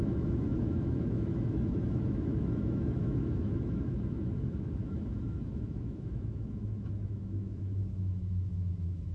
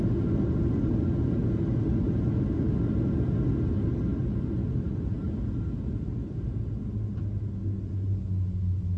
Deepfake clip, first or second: first